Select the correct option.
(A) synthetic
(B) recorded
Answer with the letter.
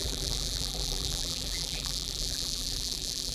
A